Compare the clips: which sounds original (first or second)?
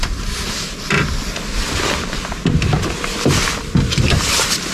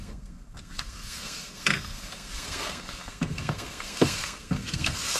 first